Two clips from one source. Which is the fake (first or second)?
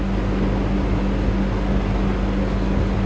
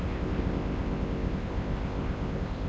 second